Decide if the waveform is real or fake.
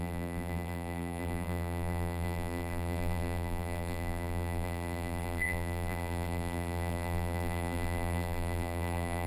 fake